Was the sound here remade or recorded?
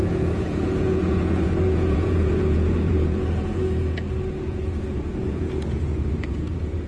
remade